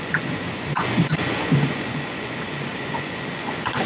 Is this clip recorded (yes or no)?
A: no